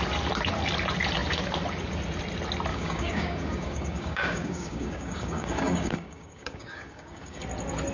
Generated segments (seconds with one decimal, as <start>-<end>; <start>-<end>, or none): 2.7-7.4